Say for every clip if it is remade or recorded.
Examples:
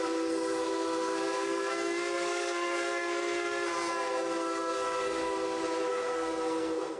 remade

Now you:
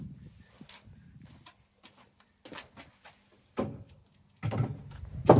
recorded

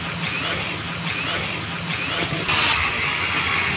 recorded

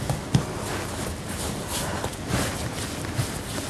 recorded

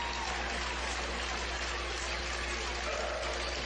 recorded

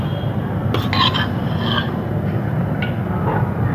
recorded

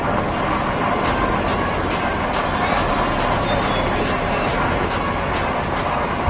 recorded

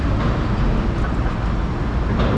recorded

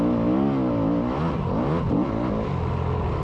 recorded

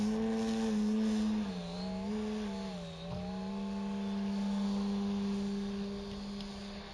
recorded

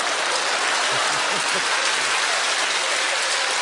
recorded